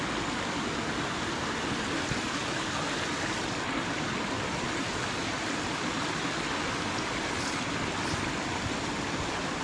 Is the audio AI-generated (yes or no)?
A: no